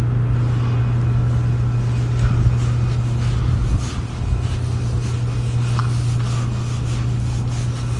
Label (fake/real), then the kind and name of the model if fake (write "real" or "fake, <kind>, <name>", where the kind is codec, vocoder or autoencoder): real